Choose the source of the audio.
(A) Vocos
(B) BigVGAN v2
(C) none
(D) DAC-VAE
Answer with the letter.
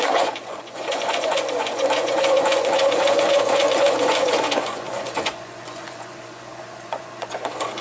A